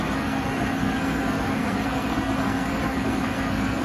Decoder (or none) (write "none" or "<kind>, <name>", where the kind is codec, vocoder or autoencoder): codec, SNAC